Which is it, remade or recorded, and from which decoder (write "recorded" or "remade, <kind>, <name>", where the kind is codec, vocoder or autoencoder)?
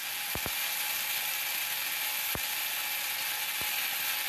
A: recorded